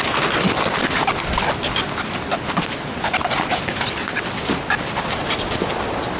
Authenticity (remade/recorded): recorded